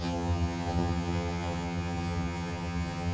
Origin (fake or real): fake